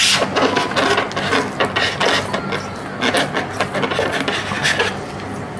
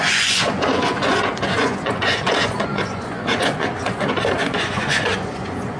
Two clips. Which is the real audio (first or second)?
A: first